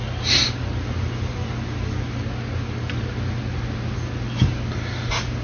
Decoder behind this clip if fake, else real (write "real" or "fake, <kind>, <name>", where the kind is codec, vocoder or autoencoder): real